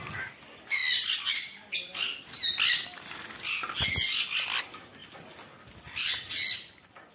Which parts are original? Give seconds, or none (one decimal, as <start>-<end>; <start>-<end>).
0.0-7.1